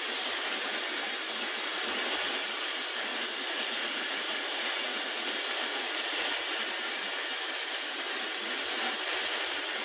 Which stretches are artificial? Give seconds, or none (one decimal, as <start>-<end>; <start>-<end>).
3.1-6.5